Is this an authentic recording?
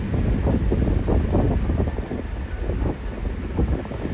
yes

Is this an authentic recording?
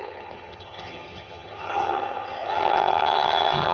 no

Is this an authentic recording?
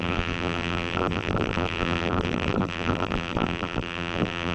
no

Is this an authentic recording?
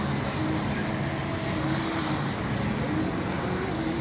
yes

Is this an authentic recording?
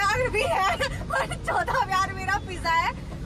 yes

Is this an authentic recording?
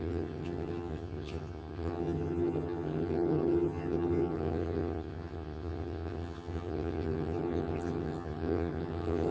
no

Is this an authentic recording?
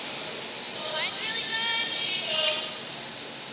yes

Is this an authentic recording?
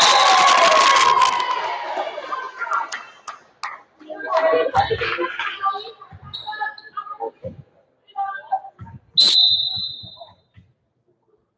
yes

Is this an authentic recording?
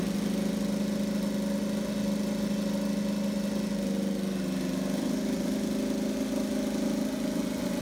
yes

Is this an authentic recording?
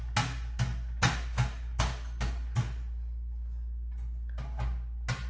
yes